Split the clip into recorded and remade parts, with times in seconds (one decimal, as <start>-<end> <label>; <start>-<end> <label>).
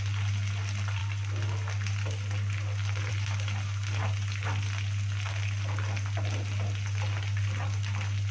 0.0-8.3 recorded